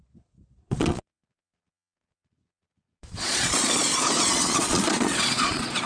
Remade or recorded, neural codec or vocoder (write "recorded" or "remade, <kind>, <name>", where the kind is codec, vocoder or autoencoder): remade, vocoder, Vocos